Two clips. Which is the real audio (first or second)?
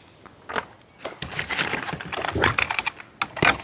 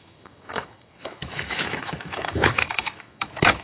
first